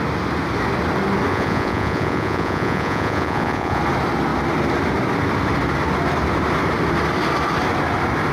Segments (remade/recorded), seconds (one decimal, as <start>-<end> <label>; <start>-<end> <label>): 0.0-1.3 recorded; 1.3-3.8 remade; 3.8-8.3 recorded